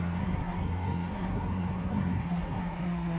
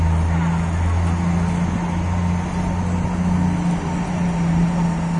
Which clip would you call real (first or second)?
second